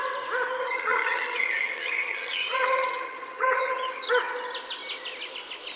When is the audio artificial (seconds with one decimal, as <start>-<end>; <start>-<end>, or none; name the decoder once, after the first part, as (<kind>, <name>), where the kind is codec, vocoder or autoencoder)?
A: 0.6-4.1 (vocoder, HiFi-GAN)